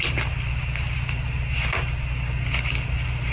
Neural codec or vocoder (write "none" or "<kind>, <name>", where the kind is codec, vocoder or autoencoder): none